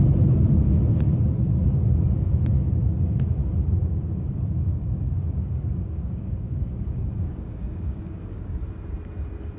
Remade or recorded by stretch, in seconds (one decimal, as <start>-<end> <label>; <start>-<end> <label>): 0.0-3.8 recorded; 3.8-8.6 remade; 8.6-9.6 recorded